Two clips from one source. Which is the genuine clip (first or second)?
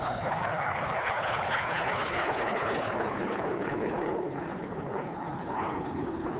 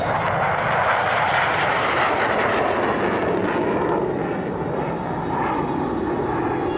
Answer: second